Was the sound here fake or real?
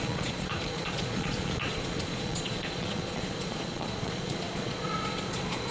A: fake